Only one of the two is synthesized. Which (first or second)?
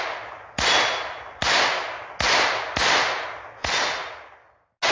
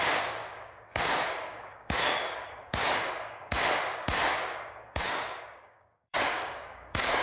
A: second